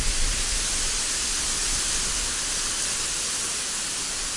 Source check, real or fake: real